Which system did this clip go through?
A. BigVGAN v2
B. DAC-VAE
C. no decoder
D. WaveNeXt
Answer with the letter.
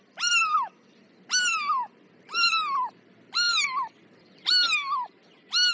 C